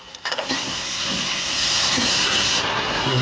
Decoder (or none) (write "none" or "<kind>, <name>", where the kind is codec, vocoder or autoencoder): codec, SNAC